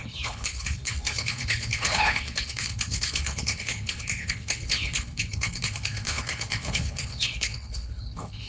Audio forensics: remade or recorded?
remade